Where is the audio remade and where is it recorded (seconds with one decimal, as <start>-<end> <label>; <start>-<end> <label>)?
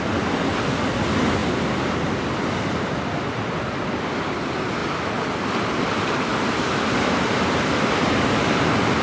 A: 0.0-1.4 recorded; 1.4-2.4 remade; 2.4-6.3 recorded; 6.3-9.0 remade